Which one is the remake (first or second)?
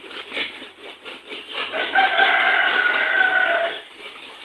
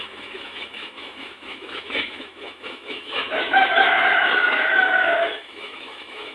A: second